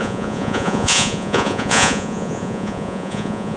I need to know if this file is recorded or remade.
remade